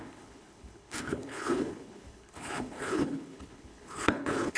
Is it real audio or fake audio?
fake